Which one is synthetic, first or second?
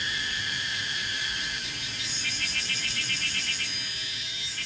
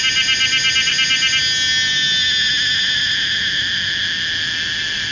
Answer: first